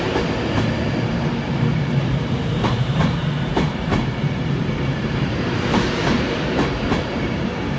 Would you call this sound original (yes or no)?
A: no